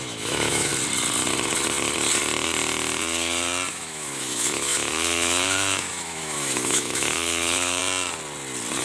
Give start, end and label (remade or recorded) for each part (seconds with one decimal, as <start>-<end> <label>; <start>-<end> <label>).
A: 0.0-0.7 remade; 0.7-3.7 recorded; 3.7-7.8 remade; 7.8-8.8 recorded